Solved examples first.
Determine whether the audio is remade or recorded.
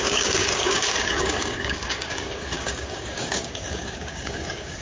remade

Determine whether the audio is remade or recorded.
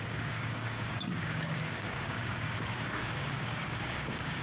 remade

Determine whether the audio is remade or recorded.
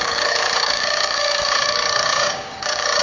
remade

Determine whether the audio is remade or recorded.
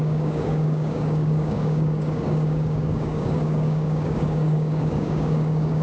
remade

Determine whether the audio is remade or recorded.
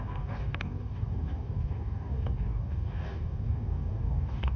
remade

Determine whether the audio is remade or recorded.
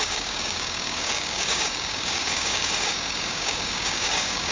remade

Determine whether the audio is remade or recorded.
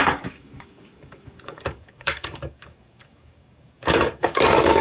remade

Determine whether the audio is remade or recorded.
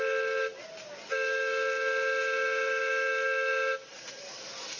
recorded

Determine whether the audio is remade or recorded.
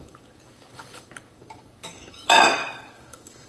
remade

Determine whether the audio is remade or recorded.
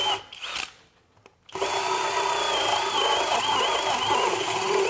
recorded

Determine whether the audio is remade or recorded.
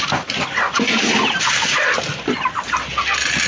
recorded